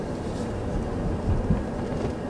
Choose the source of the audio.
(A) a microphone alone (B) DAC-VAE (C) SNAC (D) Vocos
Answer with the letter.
A